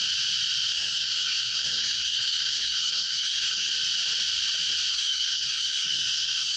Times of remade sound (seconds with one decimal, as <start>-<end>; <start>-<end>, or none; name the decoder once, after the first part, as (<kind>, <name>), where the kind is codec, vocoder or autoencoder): 0.7-3.7 (codec, SNAC); 4.9-6.6